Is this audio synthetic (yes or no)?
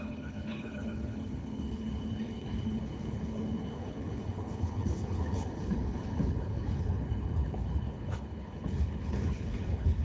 yes